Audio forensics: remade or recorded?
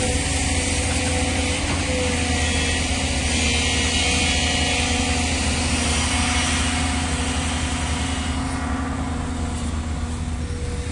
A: recorded